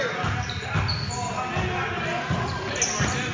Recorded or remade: recorded